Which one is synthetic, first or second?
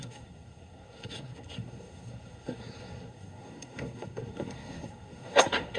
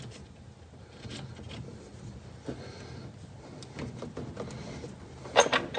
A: first